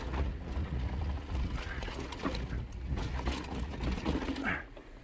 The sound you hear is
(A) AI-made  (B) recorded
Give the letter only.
A